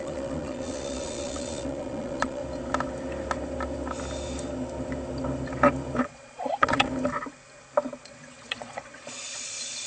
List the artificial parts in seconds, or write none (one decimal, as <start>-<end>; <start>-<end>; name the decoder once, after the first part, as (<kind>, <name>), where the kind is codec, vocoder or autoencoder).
0.0-2.4 (vocoder, Vocos); 6.0-6.9; 8.0-9.9